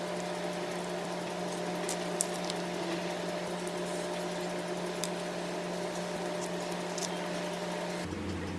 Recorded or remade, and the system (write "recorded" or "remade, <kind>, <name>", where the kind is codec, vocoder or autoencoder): recorded